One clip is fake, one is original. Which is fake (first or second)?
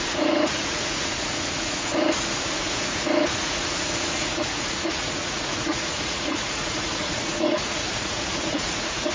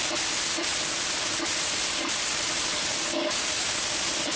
first